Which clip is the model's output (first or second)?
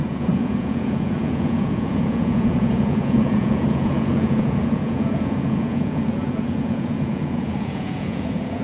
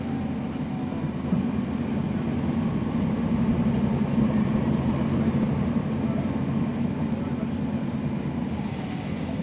first